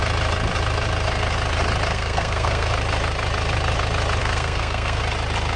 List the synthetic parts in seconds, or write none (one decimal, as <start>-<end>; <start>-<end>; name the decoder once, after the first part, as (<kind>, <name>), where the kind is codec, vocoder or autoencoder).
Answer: 1.9-2.7 (codec, SNAC); 4.2-5.0